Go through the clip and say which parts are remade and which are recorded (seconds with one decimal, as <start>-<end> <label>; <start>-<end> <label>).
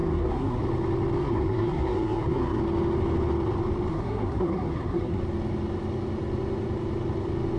0.0-0.6 remade; 0.6-1.2 recorded; 1.2-2.6 remade; 2.6-3.9 recorded; 3.9-5.2 remade; 5.2-7.6 recorded